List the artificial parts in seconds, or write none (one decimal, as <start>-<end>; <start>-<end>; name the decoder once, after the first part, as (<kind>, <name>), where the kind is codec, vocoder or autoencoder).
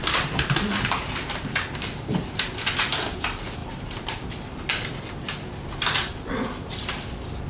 1.5-2.9 (vocoder, BigVGAN v2); 3.6-7.5